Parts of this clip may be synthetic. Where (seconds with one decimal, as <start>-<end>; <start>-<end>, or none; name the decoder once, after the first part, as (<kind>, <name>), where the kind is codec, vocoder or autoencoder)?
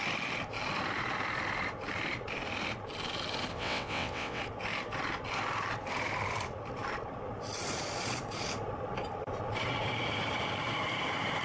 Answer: 3.5-4.4 (vocoder, WaveNeXt)